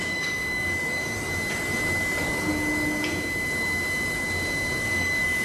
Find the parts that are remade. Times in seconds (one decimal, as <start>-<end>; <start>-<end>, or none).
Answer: 0.0-1.3; 2.0-2.5; 4.8-5.4